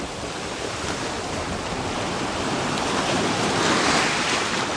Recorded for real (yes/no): yes